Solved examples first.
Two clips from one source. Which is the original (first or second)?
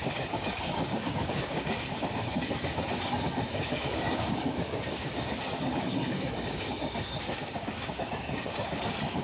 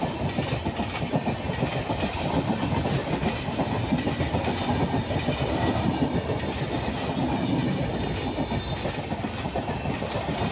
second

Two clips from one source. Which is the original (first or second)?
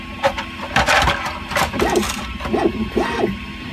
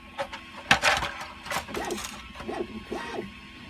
second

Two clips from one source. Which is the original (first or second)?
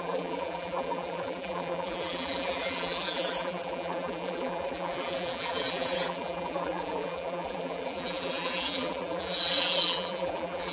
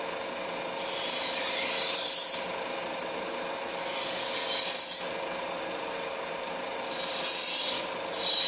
second